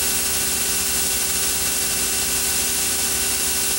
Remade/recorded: recorded